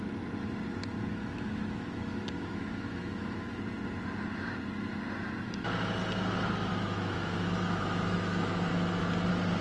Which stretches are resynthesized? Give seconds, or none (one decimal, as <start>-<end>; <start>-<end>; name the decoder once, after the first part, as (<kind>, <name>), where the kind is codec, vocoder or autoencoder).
1.1-3.6 (autoencoder, DAC-VAE); 6.7-8.7